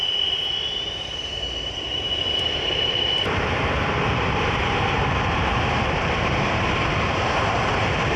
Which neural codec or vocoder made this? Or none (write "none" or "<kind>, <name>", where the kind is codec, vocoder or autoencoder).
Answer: vocoder, BigVGAN v2